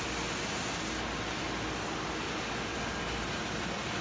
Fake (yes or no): no